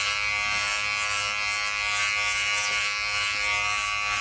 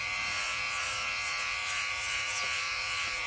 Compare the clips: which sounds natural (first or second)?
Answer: first